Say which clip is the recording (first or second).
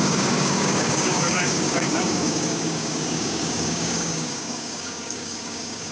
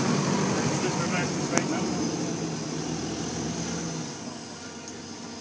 second